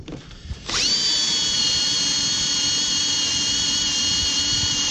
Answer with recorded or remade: remade